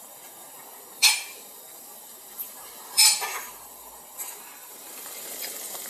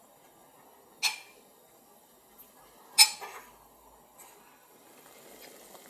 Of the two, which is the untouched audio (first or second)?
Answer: second